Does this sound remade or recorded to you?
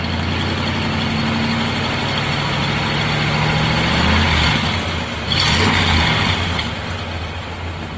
recorded